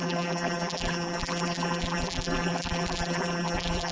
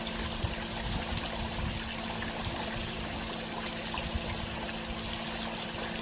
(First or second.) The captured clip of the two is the second